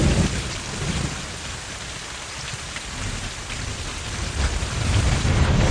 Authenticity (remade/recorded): recorded